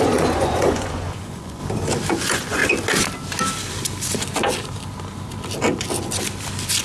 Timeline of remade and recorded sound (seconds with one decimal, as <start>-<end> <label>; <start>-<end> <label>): 0.0-1.6 remade; 1.6-2.1 recorded; 2.1-2.6 remade; 2.6-6.8 recorded